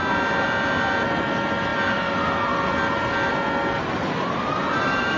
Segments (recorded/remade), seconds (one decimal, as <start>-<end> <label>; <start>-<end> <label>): 0.0-5.2 recorded